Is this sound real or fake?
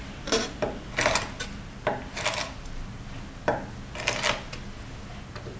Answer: real